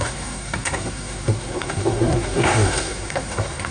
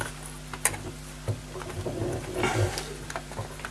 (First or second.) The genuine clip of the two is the second